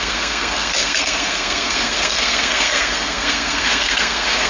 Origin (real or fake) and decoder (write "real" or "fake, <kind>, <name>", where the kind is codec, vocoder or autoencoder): fake, codec, SNAC